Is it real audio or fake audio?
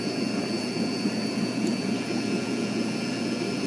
fake